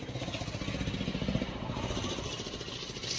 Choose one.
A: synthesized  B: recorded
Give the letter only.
B